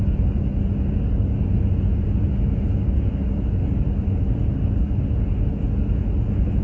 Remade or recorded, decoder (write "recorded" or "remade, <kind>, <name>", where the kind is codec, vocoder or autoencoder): recorded